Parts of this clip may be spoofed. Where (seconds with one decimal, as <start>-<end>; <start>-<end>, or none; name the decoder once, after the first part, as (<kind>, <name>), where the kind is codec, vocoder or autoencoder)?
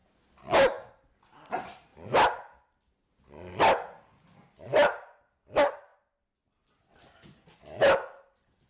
none